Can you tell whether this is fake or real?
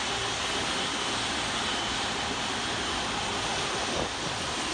real